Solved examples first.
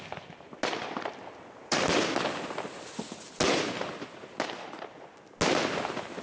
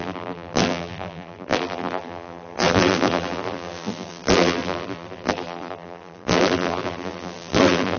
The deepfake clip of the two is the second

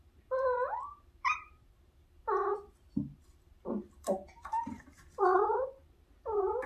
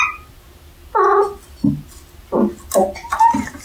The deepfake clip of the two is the first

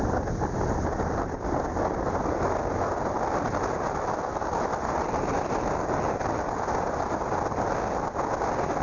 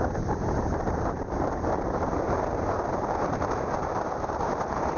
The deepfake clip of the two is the second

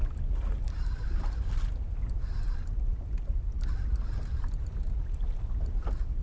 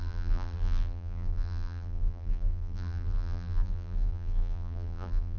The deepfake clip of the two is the second